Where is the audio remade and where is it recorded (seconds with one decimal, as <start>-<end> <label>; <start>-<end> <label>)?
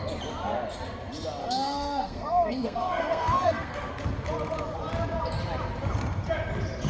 0.0-1.4 recorded; 1.4-3.9 remade; 3.9-6.9 recorded